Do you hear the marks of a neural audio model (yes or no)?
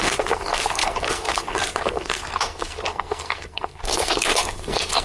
yes